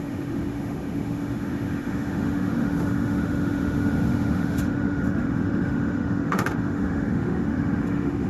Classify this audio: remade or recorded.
remade